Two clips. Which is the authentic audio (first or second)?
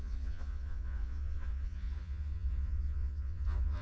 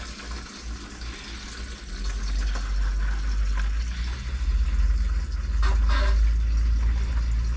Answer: second